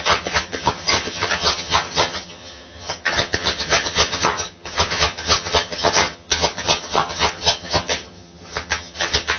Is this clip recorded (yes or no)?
no